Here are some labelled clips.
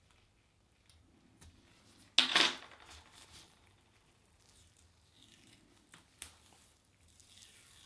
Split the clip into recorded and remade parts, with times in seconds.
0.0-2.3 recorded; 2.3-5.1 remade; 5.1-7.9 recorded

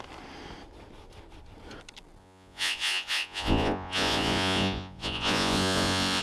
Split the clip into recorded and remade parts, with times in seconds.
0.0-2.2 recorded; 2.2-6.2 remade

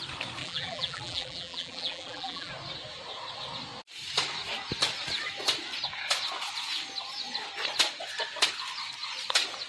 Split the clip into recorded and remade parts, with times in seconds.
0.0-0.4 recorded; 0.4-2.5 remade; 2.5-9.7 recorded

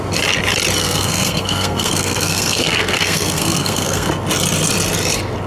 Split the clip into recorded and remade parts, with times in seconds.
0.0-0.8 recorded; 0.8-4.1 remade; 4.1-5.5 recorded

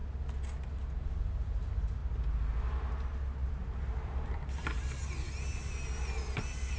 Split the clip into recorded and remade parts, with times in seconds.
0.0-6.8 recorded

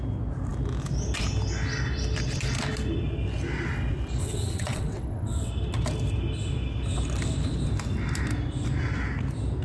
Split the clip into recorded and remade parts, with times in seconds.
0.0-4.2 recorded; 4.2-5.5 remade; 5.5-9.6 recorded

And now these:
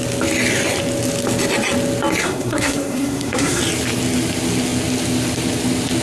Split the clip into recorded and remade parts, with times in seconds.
0.0-2.2 recorded; 2.2-3.6 remade; 3.6-6.0 recorded